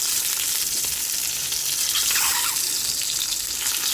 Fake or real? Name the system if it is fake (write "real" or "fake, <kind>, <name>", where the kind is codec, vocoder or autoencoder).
real